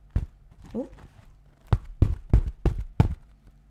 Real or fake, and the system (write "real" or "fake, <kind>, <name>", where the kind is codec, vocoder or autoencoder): real